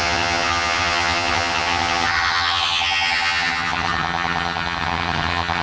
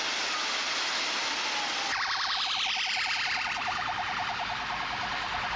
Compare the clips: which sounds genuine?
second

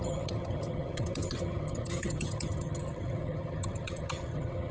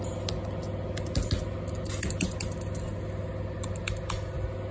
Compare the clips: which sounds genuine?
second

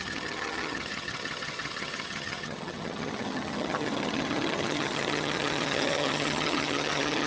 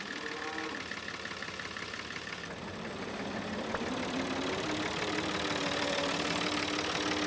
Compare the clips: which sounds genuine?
second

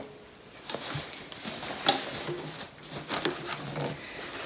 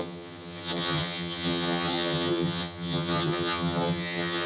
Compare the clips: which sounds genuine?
first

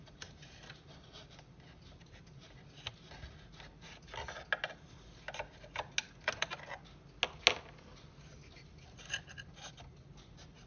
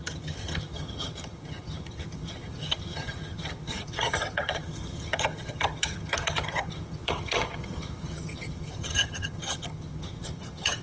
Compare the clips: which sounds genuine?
first